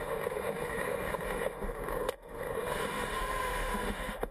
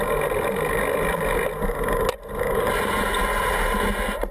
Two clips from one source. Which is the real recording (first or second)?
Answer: second